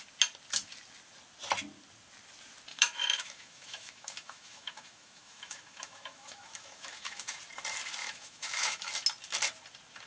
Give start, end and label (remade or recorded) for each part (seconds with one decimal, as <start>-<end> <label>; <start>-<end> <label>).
0.0-2.7 recorded; 2.7-7.4 remade; 7.4-8.0 recorded; 8.0-8.9 remade; 8.9-10.1 recorded